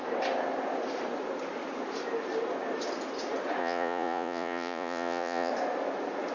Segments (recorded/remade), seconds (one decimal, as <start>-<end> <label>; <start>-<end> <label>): 0.0-3.6 recorded; 3.6-5.5 remade; 5.5-6.3 recorded